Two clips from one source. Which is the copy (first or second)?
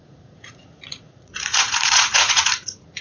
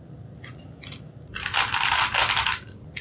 first